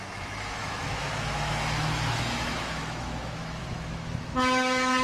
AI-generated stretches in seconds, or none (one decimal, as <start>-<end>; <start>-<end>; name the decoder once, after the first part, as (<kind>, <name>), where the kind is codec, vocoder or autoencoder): 0.0-5.0 (autoencoder, DAC-VAE)